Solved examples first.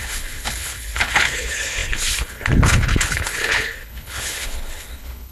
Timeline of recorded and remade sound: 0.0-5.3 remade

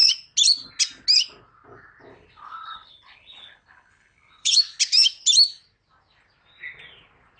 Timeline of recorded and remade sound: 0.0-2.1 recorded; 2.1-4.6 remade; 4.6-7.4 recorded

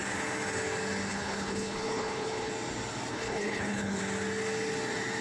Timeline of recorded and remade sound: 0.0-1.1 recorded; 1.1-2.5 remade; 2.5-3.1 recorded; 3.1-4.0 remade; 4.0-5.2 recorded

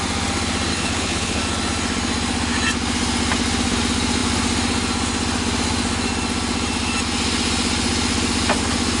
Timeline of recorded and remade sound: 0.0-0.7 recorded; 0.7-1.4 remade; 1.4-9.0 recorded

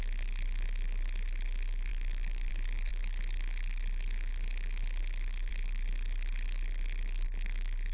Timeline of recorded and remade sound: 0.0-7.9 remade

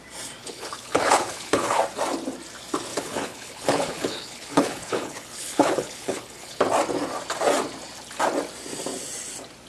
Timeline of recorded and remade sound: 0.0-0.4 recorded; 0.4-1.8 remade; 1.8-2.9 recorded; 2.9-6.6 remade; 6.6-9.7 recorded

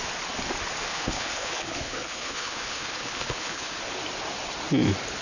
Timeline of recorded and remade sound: 0.0-0.9 recorded; 0.9-3.7 remade; 3.7-5.2 recorded